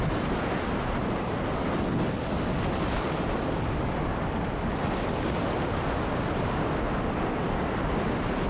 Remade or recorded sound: recorded